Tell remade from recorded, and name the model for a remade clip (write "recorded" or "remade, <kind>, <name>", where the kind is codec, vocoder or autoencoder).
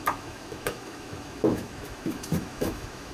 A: remade, autoencoder, DAC-VAE